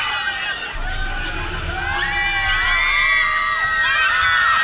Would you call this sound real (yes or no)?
yes